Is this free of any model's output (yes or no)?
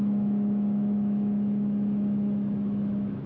no